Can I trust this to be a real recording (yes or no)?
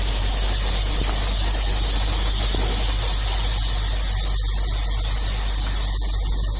yes